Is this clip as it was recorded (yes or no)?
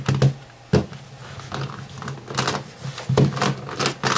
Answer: yes